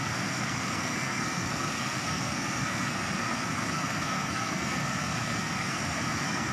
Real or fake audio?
fake